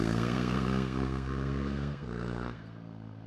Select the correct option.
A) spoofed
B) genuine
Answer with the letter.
A